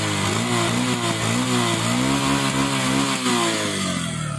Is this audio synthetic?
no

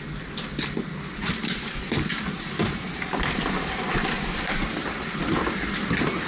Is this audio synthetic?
no